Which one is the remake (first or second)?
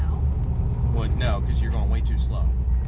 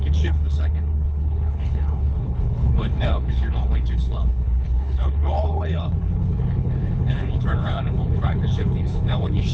second